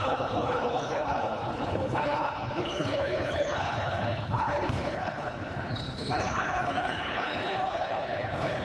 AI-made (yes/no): yes